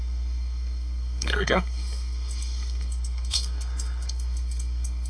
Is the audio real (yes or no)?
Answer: no